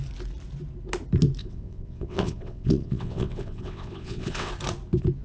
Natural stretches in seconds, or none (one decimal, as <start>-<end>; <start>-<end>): 0.0-1.4; 4.5-5.2

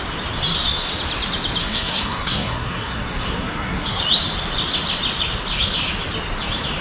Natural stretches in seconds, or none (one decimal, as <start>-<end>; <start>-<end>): 0.0-1.6; 4.0-6.8

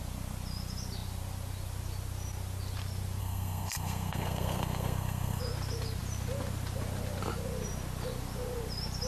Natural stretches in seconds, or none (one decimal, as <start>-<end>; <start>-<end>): 0.0-3.2; 5.4-9.1

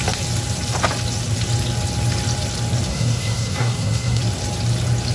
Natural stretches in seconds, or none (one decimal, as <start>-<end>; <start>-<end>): 0.0-2.9; 4.2-5.1

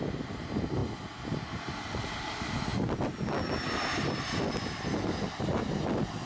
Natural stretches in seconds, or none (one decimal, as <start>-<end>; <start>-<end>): 0.0-6.3

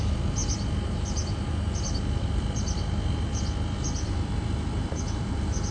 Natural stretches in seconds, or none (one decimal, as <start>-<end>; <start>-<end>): 0.4-1.8

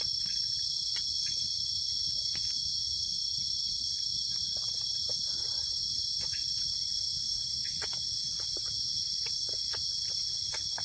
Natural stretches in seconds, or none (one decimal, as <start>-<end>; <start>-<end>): 0.0-10.8

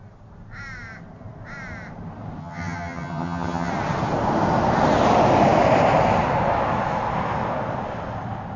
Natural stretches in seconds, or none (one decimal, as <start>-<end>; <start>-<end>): 0.0-2.4; 3.7-8.6